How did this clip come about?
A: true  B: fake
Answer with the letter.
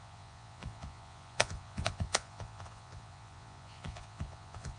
B